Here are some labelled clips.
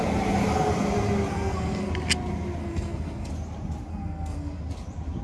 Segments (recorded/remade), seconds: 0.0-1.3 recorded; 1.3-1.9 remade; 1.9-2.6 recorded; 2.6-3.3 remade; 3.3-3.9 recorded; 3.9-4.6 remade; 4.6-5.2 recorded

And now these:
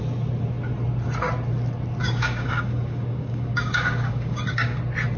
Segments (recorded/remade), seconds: 0.0-2.0 recorded; 2.0-4.8 remade; 4.8-5.2 recorded

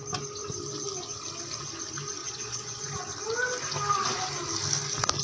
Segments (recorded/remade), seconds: 0.0-2.2 recorded; 2.2-2.9 remade; 2.9-5.2 recorded

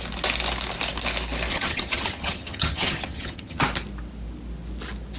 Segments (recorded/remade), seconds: 0.0-1.5 recorded; 1.5-3.6 remade; 3.6-5.2 recorded

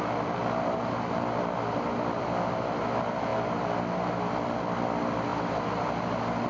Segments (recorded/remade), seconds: 0.0-6.5 recorded

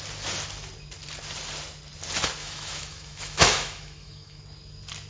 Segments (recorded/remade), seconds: 0.0-2.4 recorded; 2.4-4.4 remade; 4.4-5.1 recorded